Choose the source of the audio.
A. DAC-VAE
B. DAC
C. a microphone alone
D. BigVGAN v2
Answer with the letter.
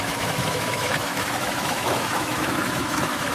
A